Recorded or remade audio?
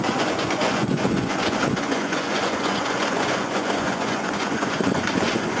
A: remade